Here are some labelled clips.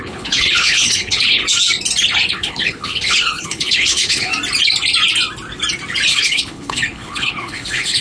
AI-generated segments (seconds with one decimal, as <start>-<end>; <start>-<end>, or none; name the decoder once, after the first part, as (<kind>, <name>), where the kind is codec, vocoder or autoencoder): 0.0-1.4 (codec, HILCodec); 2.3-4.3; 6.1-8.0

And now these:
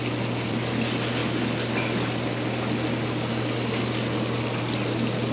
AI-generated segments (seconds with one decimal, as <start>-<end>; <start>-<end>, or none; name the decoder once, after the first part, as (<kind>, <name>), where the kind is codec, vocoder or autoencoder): none

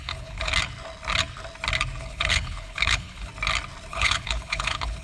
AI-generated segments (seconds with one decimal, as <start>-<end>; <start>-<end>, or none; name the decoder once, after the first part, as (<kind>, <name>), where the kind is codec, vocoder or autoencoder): 0.0-0.5 (codec, HILCodec); 2.0-3.3; 3.9-5.0

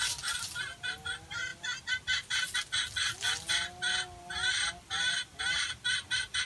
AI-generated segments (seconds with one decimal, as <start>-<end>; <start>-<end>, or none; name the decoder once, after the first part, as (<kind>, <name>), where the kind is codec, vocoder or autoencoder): none

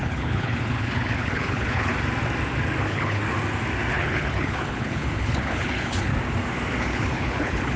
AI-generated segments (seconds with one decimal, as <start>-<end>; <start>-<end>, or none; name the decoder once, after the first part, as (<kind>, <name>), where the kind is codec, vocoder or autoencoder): 0.0-1.9 (codec, HILCodec); 2.8-3.2; 3.9-6.1; 6.8-7.8

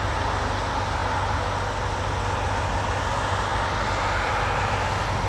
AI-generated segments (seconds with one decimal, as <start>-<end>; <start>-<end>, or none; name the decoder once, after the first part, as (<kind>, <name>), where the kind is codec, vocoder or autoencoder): none

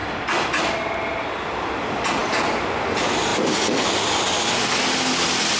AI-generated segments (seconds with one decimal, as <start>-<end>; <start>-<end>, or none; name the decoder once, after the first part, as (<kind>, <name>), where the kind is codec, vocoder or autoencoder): none